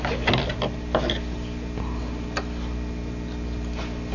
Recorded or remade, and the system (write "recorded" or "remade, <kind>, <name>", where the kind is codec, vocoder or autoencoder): recorded